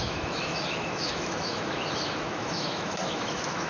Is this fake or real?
fake